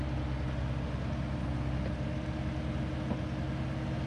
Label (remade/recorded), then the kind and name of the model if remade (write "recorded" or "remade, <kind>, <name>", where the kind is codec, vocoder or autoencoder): recorded